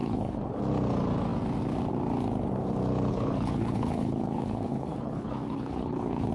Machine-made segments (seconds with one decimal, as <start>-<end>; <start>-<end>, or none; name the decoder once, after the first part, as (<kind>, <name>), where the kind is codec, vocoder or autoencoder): 0.0-0.6 (codec, HILCodec); 3.1-6.3